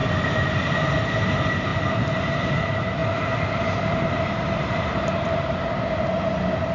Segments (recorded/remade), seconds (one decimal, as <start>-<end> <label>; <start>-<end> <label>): 0.0-1.0 remade; 1.0-3.0 recorded; 3.0-5.0 remade; 5.0-6.7 recorded